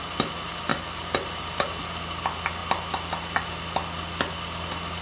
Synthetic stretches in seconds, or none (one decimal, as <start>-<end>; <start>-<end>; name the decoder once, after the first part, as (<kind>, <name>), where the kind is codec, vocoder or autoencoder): none